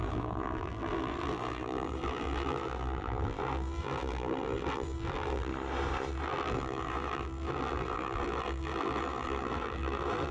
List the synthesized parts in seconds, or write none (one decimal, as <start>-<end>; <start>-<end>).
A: 0.0-5.5; 6.1-10.3